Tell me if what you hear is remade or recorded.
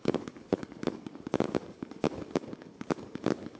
remade